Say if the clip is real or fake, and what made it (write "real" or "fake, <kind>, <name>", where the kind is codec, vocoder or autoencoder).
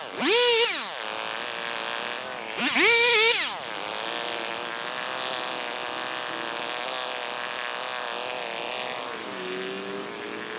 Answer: real